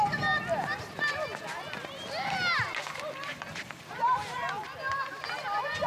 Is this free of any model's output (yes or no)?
yes